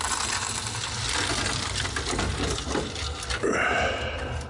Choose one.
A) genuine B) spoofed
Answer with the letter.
A